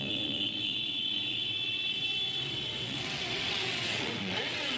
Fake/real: fake